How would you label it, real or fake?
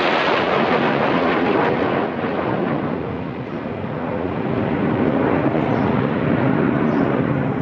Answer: fake